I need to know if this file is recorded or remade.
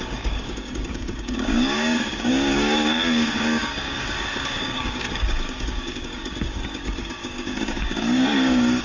remade